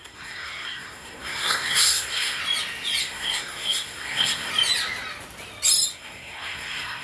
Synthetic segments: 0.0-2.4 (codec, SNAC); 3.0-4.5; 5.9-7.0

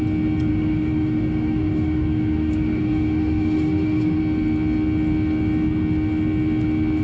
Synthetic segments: 0.5-4.2 (autoencoder, DAC-VAE)

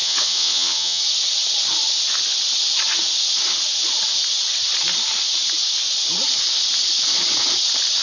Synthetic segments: 0.0-1.0 (vocoder, WaveNeXt)

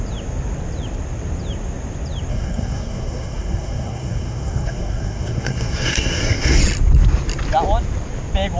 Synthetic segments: 2.3-6.6 (codec, SNAC)